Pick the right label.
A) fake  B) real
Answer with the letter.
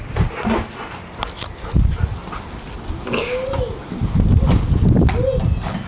B